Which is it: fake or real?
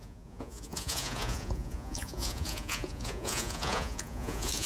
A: fake